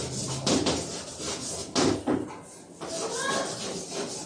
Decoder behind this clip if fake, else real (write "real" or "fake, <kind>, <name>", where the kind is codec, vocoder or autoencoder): real